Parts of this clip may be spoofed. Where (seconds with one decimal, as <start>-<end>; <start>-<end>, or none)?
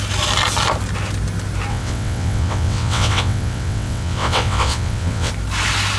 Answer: 1.7-5.3